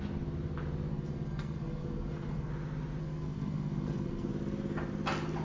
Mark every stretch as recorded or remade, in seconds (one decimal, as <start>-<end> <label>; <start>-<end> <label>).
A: 0.0-0.9 recorded; 0.9-2.5 remade; 2.5-3.0 recorded; 3.0-4.3 remade; 4.3-5.4 recorded

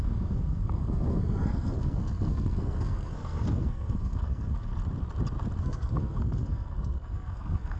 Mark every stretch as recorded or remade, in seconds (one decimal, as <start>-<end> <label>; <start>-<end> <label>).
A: 0.0-4.7 remade; 4.7-5.6 recorded; 5.6-7.8 remade

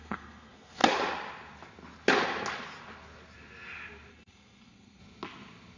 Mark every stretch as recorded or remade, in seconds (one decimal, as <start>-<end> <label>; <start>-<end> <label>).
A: 0.0-0.8 remade; 0.8-4.1 recorded; 4.1-5.0 remade; 5.0-5.8 recorded

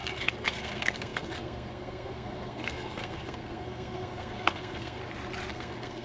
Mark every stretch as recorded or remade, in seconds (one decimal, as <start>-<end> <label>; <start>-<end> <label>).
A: 0.0-5.0 remade; 5.0-5.5 recorded; 5.5-6.0 remade

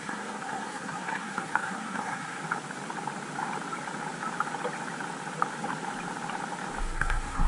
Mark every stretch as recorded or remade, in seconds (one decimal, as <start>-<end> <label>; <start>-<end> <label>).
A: 0.0-2.4 remade; 2.4-6.8 recorded; 6.8-7.5 remade

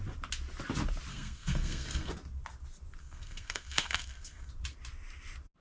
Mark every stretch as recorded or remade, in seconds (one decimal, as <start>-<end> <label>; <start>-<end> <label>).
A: 0.0-1.1 recorded; 1.1-2.1 remade; 2.1-3.0 recorded; 3.0-4.5 remade; 4.5-5.6 recorded

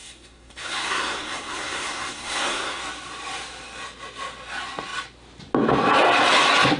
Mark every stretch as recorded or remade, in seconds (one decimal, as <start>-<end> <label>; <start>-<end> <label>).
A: 0.0-2.8 remade; 2.8-6.8 recorded